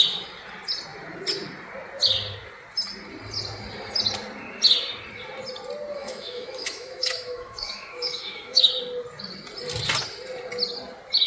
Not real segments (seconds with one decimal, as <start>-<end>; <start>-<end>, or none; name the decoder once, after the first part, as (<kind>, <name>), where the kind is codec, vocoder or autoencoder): 6.0-8.7 (autoencoder, DAC-VAE)